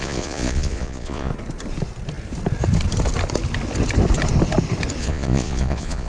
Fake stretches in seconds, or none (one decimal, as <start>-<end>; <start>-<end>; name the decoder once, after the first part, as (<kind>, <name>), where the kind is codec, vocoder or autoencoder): 0.0-1.3 (vocoder, Vocos); 5.0-6.1

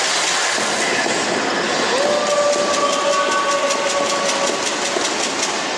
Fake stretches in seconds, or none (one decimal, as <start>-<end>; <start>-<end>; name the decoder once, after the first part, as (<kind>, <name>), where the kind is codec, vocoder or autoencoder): none

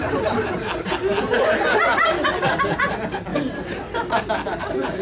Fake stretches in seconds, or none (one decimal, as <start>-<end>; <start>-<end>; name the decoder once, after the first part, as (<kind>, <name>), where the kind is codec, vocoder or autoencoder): none

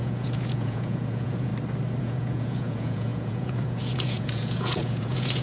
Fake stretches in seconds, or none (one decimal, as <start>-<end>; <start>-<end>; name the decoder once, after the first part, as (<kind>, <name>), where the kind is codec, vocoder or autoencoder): 0.0-1.5 (vocoder, Vocos); 2.0-5.4

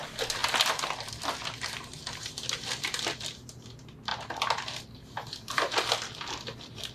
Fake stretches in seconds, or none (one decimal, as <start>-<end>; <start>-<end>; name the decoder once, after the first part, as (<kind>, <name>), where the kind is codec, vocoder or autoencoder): none

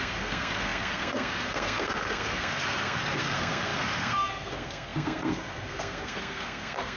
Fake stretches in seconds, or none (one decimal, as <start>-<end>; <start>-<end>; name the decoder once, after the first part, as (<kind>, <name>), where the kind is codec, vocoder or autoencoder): 0.0-7.0 (codec, SNAC)

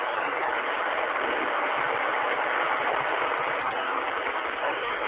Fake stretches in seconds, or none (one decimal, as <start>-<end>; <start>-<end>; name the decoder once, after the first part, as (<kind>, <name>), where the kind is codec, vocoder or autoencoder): 0.0-0.5 (codec, SNAC); 3.6-4.0; 4.6-5.1